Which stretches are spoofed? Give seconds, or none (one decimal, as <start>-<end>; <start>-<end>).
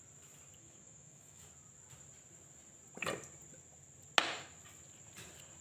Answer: 0.6-1.5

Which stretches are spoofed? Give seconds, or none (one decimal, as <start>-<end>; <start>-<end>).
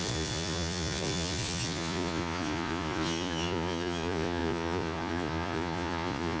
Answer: 0.0-6.4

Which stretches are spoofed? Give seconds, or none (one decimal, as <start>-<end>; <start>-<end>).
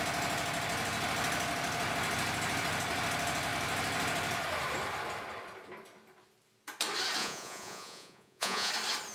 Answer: 7.2-8.7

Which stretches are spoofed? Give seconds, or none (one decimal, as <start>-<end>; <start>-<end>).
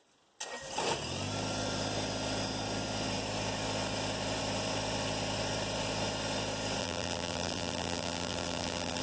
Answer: 6.8-9.0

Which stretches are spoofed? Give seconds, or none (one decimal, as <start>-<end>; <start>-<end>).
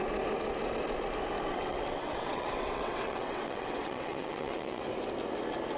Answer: 1.5-4.8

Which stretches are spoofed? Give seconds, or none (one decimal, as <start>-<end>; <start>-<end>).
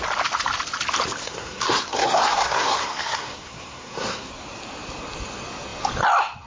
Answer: 1.2-4.3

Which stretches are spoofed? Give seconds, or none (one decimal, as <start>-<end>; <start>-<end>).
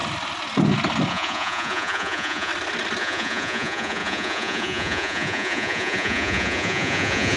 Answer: 1.1-2.5; 3.0-7.4